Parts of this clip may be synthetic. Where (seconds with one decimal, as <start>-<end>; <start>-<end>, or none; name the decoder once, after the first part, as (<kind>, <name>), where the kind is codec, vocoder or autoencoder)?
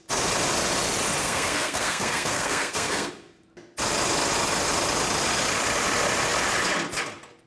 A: 1.2-3.1 (codec, SNAC)